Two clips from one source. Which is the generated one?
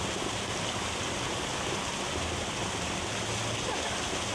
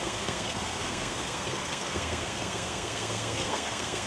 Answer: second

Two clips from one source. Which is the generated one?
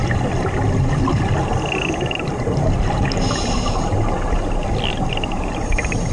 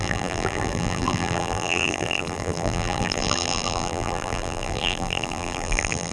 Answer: second